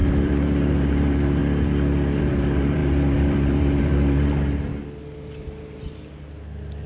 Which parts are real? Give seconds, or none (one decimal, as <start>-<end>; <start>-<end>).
1.4-2.2; 4.7-6.9